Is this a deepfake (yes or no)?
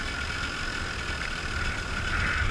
no